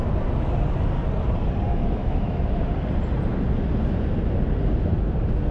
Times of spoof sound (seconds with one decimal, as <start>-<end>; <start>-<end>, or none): 1.7-2.4